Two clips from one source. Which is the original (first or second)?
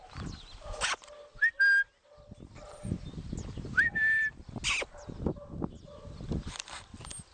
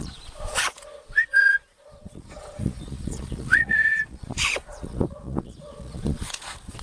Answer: first